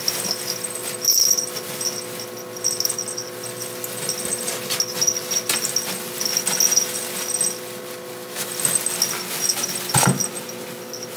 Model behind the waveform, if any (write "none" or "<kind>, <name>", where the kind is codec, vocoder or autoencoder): none